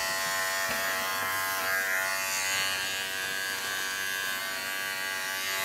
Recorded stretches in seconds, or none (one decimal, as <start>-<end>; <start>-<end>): 0.0-5.6